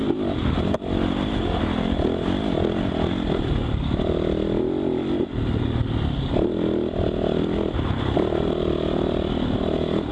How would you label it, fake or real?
real